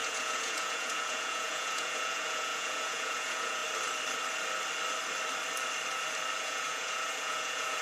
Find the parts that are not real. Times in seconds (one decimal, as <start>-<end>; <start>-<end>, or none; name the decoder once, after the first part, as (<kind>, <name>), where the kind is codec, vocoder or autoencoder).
0.0-3.6 (vocoder, Vocos); 6.4-7.8